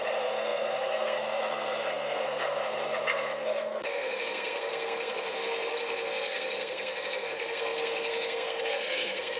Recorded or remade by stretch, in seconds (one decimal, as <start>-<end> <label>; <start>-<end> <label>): 0.0-9.4 remade